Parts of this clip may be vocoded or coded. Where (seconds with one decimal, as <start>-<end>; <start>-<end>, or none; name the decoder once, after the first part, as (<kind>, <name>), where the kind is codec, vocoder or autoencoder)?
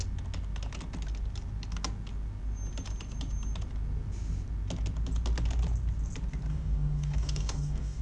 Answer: 6.5-8.0 (codec, DAC)